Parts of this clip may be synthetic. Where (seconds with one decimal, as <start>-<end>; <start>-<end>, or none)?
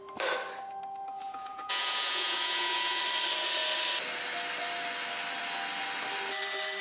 1.2-3.0